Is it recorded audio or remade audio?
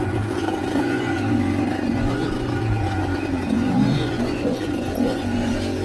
remade